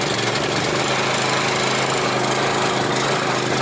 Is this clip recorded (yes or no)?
yes